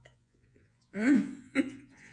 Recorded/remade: remade